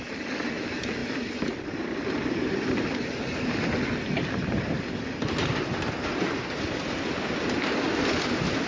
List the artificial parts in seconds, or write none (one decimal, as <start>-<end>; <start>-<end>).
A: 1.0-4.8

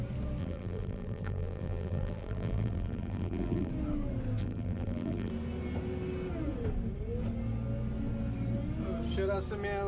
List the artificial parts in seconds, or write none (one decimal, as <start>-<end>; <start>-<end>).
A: 0.4-3.7; 4.4-5.3

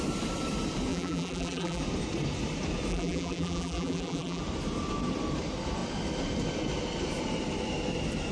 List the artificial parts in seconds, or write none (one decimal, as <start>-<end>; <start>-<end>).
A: 0.9-1.8; 2.9-4.4

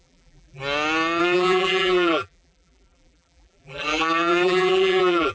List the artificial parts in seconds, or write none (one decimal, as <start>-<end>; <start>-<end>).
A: 0.0-0.6; 1.2-5.3

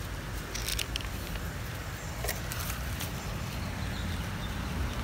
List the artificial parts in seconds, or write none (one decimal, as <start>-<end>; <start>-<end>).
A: 0.7-3.7

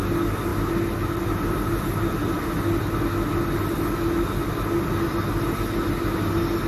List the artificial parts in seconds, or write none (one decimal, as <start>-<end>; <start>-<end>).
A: none

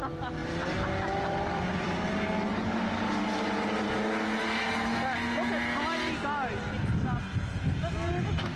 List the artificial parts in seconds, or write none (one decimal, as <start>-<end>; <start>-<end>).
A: 0.4-2.0

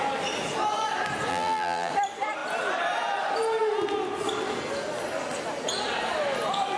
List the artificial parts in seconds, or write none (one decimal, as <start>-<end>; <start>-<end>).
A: 1.3-1.9